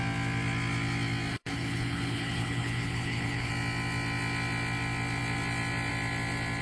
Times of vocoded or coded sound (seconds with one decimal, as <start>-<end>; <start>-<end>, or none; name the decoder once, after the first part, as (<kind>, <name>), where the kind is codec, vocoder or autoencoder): 1.3-3.5 (codec, HILCodec)